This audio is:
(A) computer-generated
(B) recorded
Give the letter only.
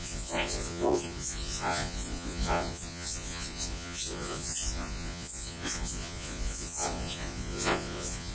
A